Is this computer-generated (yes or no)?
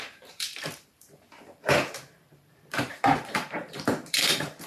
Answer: yes